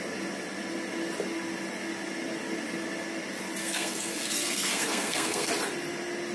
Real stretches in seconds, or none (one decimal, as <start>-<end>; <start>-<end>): 0.0-3.6; 5.5-6.3